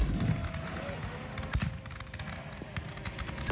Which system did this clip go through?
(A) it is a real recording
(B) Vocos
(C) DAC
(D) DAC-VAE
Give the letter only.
A